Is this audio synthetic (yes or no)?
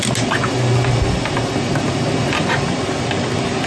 no